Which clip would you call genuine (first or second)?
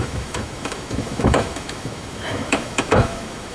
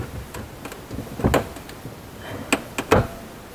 second